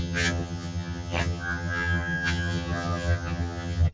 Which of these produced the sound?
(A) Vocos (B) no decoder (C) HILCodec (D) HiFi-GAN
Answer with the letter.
D